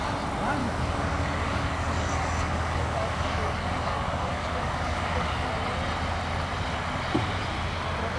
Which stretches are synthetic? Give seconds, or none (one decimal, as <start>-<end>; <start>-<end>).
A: 0.6-5.5